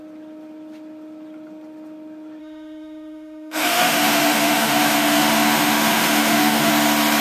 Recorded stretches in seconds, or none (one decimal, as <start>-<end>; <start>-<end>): 0.0-2.4; 6.7-7.2